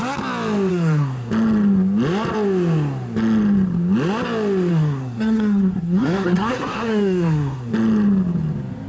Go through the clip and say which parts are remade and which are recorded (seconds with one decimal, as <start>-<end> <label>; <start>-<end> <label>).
0.0-0.7 recorded; 0.7-1.3 remade; 1.3-4.7 recorded; 4.7-7.7 remade; 7.7-8.9 recorded